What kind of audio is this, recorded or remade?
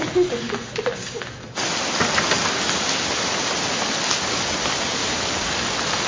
recorded